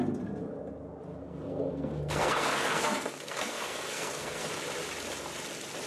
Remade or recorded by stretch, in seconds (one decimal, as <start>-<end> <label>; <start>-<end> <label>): 0.0-1.2 recorded; 1.2-4.5 remade; 4.5-5.9 recorded

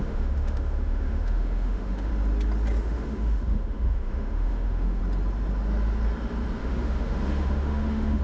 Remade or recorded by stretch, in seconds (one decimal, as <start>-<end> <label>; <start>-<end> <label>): 0.0-2.1 remade; 2.1-2.8 recorded; 2.8-5.0 remade; 5.0-6.6 recorded; 6.6-8.2 remade

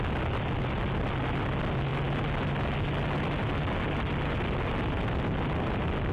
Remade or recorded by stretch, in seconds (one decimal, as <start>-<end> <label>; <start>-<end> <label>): 0.0-6.1 recorded

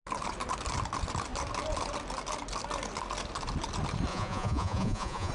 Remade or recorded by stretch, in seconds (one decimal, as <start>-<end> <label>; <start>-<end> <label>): 0.0-4.1 recorded; 4.1-5.3 remade